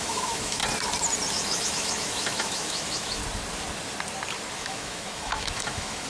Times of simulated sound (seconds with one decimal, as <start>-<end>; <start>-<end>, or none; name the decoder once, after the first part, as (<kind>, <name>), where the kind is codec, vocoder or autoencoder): 0.0-0.6 (autoencoder, DAC-VAE); 1.3-3.2; 4.5-6.1